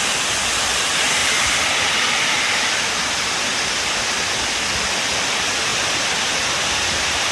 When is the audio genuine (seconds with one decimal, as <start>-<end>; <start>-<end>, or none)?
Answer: 0.0-7.3